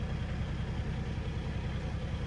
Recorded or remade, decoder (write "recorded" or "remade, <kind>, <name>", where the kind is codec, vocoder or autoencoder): recorded